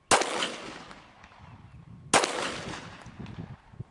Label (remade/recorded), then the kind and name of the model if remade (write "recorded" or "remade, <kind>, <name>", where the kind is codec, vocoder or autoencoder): recorded